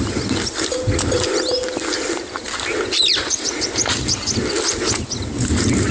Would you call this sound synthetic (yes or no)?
no